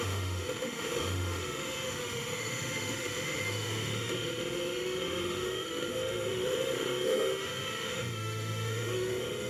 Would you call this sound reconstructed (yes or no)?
yes